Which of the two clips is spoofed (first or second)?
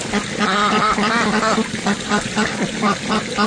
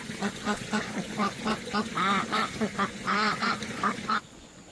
second